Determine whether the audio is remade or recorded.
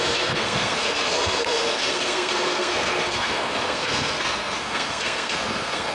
remade